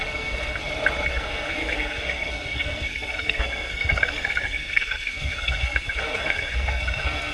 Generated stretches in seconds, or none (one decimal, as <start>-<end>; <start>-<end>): 0.0-0.6; 1.1-7.3